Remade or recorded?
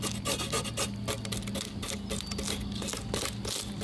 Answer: recorded